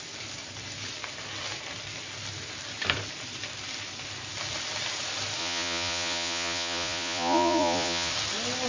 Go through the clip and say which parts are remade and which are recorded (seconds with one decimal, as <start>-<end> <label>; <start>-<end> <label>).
0.0-5.4 recorded; 5.4-8.1 remade; 8.1-8.7 recorded